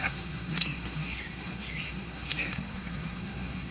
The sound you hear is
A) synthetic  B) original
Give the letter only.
A